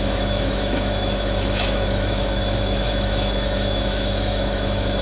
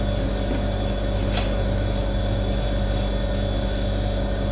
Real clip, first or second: second